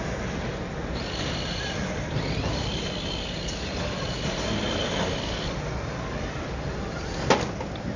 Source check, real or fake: real